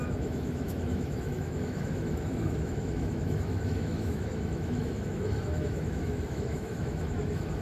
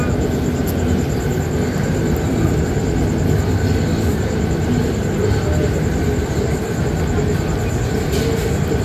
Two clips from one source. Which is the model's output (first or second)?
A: first